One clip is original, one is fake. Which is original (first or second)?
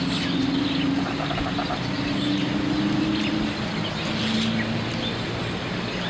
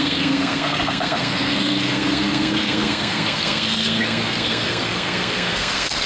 first